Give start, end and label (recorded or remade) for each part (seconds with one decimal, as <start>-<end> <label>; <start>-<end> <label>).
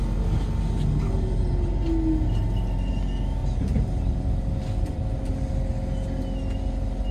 0.0-3.4 recorded; 3.4-5.5 remade; 5.5-7.1 recorded